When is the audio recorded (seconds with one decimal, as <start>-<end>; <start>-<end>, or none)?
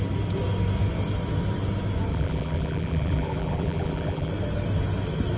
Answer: 0.0-2.1; 4.3-5.4